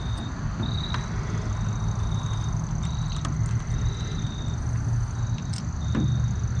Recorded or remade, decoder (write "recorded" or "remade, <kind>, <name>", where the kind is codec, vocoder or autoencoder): recorded